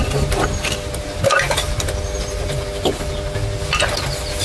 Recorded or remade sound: recorded